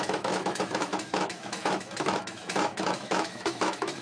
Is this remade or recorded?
remade